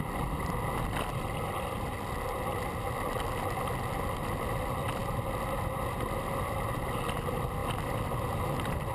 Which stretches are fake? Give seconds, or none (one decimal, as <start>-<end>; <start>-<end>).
none